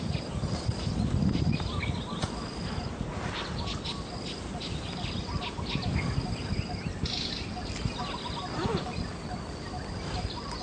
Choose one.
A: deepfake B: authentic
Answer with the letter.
B